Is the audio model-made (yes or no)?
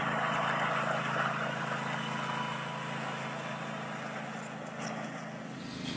no